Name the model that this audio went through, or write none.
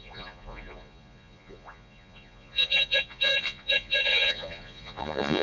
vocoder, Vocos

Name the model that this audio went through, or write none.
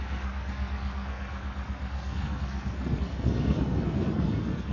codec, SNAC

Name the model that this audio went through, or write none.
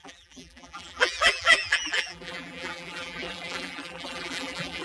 vocoder, BigVGAN v2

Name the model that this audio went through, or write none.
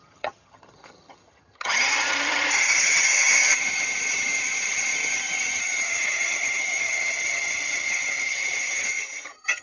vocoder, HiFi-GAN